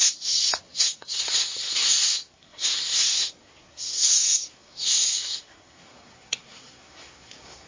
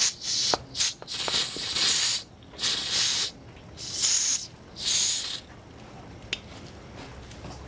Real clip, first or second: second